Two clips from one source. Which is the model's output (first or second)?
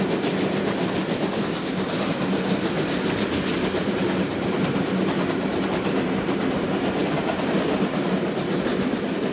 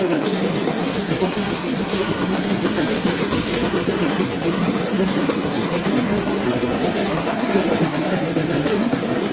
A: second